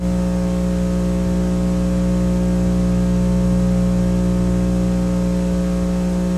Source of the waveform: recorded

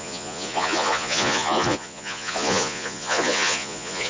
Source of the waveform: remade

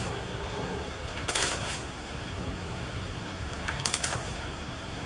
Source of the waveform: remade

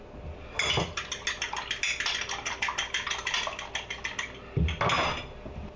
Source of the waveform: recorded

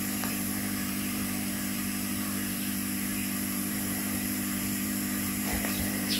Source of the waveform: remade